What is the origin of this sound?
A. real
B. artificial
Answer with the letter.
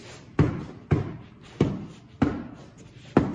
A